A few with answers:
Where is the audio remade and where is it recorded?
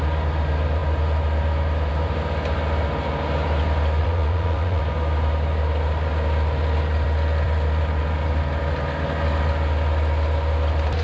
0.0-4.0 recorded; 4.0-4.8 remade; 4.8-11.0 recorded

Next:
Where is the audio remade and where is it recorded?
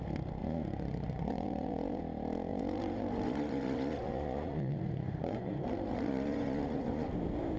0.0-0.4 recorded; 0.4-2.0 remade; 2.0-2.5 recorded; 2.5-7.1 remade; 7.1-7.6 recorded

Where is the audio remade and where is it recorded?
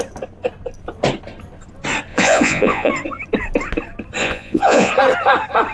0.0-2.1 recorded; 2.1-2.9 remade; 2.9-4.2 recorded; 4.2-4.9 remade; 4.9-5.7 recorded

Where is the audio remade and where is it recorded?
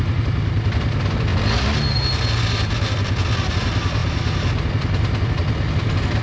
0.0-6.2 recorded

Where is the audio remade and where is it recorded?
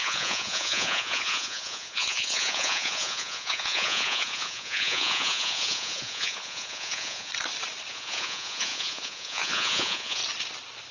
0.0-7.3 remade; 7.3-7.9 recorded; 7.9-10.2 remade; 10.2-10.9 recorded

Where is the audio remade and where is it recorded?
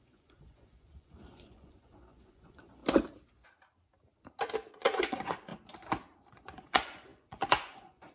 0.0-2.8 remade; 2.8-4.7 recorded; 4.7-5.5 remade; 5.5-6.3 recorded; 6.3-8.1 remade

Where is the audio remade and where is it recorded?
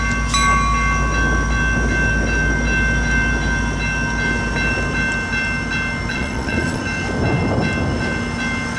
0.0-6.1 recorded; 6.1-6.8 remade; 6.8-8.8 recorded